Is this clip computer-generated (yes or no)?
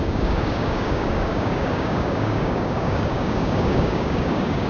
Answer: yes